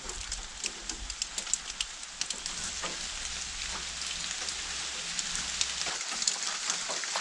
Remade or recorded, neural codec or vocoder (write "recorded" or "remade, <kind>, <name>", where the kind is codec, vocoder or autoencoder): recorded